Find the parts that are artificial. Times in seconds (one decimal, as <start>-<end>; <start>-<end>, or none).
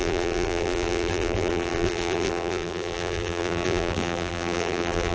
0.0-5.1